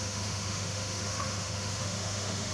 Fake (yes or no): yes